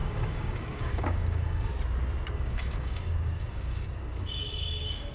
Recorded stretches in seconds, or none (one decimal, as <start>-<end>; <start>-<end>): 1.7-2.3